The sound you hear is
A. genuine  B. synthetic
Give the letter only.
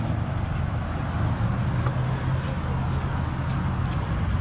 A